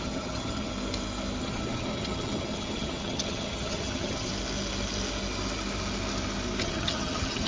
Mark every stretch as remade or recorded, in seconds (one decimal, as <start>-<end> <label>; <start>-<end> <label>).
0.0-0.7 remade; 0.7-1.4 recorded; 1.4-4.3 remade; 4.3-6.6 recorded; 6.6-7.5 remade